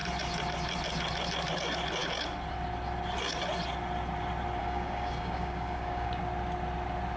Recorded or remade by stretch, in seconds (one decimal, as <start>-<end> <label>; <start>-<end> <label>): 0.0-4.6 recorded; 4.6-6.2 remade; 6.2-7.2 recorded